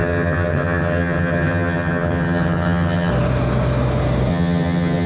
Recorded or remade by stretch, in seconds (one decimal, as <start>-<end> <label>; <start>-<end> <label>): 0.0-3.1 remade; 3.1-4.3 recorded; 4.3-5.1 remade